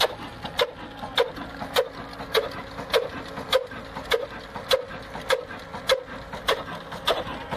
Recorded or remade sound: recorded